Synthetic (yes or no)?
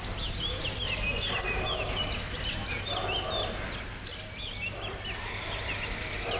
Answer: no